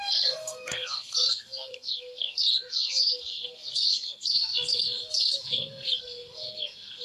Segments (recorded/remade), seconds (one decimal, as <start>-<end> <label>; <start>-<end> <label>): 0.0-7.0 remade